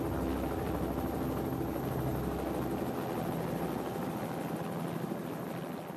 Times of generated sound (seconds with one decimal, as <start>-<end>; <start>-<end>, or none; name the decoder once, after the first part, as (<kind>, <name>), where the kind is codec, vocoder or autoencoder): none